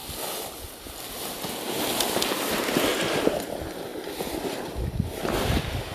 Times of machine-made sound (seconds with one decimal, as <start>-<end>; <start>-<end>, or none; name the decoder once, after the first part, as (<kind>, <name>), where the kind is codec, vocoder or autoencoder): none

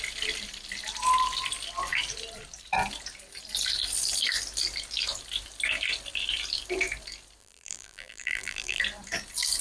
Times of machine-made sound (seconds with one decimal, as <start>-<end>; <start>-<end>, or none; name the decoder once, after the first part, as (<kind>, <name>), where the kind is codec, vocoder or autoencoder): 7.4-8.8 (vocoder, BigVGAN v2)

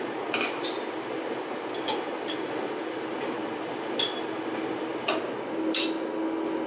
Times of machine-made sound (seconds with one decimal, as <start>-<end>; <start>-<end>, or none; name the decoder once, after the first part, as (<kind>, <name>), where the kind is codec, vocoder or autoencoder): 4.9-5.8 (vocoder, BigVGAN v2)

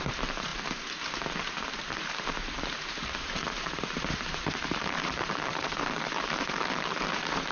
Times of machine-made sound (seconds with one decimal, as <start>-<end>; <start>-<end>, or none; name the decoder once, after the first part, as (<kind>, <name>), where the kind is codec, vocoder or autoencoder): 0.0-0.5 (vocoder, BigVGAN v2); 1.3-7.5

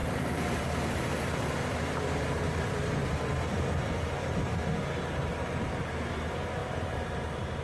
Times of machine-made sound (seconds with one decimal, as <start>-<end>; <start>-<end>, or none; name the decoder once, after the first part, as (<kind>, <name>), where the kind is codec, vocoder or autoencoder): 0.0-4.6 (vocoder, BigVGAN v2); 5.3-5.8; 6.6-7.6